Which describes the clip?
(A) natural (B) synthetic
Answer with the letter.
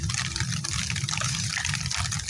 A